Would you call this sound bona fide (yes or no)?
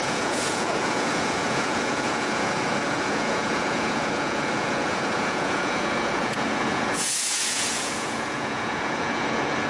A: no